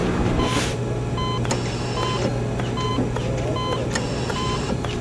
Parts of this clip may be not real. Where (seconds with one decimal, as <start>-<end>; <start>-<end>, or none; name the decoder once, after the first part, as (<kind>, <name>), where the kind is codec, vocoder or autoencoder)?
0.0-0.8 (vocoder, BigVGAN v2); 4.3-5.0